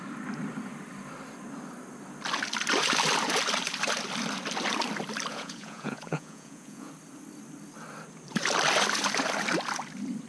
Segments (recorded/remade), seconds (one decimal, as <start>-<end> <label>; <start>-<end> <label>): 0.0-5.3 recorded; 5.3-6.9 remade; 6.9-10.3 recorded